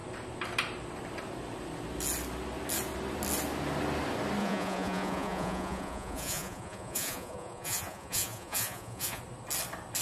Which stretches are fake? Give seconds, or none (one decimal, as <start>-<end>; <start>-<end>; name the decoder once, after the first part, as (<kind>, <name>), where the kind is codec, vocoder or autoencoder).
4.4-9.2 (vocoder, Vocos)